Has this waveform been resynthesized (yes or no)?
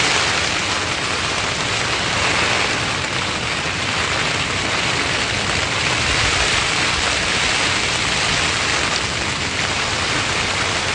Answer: no